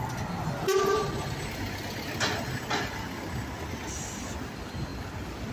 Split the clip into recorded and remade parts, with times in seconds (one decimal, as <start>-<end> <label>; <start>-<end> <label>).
0.0-4.9 recorded; 4.9-5.5 remade